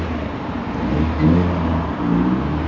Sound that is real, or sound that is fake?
real